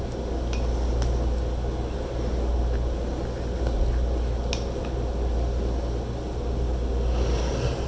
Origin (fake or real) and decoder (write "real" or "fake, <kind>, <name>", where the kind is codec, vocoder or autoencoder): real